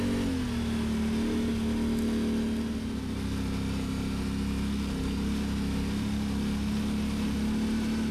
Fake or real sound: real